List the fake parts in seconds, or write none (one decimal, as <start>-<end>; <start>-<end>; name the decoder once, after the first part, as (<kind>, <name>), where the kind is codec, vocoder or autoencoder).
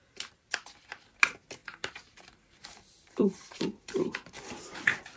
1.6-4.0 (vocoder, BigVGAN v2)